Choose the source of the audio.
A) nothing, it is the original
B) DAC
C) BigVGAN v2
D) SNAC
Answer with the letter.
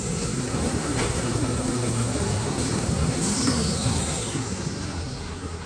D